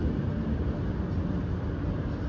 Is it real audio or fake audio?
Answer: real